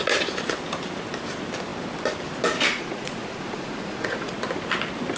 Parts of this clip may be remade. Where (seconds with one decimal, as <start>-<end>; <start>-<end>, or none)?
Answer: 2.7-4.3